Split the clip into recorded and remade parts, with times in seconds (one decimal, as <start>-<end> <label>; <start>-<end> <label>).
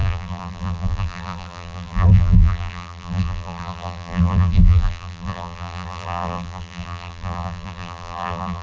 0.0-8.6 remade